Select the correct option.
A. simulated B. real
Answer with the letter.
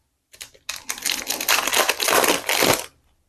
B